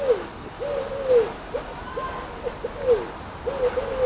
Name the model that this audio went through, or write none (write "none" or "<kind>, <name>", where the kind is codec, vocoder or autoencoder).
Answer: none